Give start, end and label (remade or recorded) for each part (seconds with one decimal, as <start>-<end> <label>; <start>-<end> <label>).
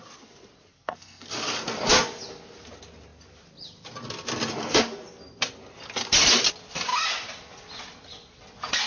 0.0-0.7 recorded; 0.7-1.3 remade; 1.3-8.9 recorded